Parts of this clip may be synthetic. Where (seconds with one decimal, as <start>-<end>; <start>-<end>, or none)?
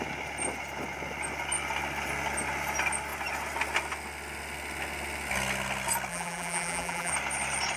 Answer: 6.1-7.1